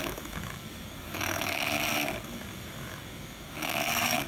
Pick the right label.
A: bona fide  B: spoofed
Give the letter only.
B